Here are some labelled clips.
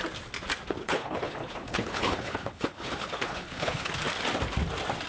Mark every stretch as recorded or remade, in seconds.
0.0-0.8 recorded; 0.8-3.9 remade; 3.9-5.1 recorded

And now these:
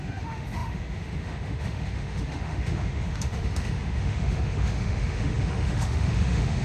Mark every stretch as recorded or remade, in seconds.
0.0-6.6 remade